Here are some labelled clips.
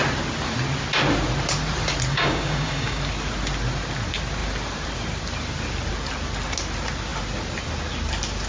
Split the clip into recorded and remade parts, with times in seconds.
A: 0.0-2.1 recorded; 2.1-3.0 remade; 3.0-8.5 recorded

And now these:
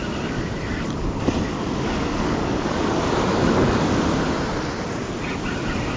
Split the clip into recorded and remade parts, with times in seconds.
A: 0.0-1.5 recorded; 1.5-4.1 remade; 4.1-6.0 recorded

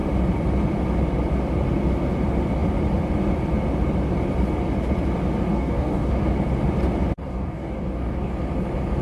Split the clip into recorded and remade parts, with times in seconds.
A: 0.0-5.5 recorded; 5.5-6.1 remade; 6.1-7.2 recorded; 7.2-8.3 remade; 8.3-9.0 recorded

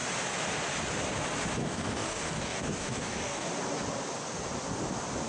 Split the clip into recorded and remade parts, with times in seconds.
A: 0.0-1.6 recorded; 1.6-3.5 remade; 3.5-5.3 recorded

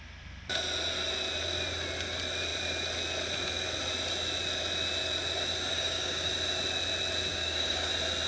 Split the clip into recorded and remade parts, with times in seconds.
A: 0.0-5.7 recorded; 5.7-6.3 remade; 6.3-7.3 recorded; 7.3-7.9 remade; 7.9-8.3 recorded

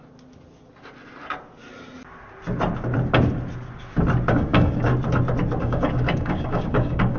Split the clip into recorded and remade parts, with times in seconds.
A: 0.0-4.3 recorded; 4.3-4.9 remade; 4.9-5.6 recorded; 5.6-7.2 remade

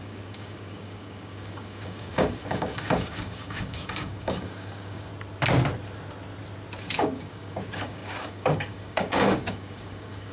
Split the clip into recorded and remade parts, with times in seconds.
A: 0.0-5.1 remade; 5.1-6.8 recorded; 6.8-10.3 remade

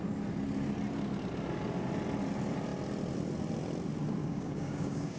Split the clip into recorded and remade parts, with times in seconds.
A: 0.0-4.2 recorded; 4.2-5.2 remade